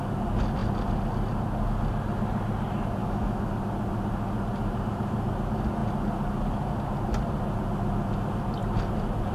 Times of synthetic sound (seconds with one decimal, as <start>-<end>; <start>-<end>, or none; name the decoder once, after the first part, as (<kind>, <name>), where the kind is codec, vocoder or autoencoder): 3.0-3.5 (autoencoder, DAC-VAE)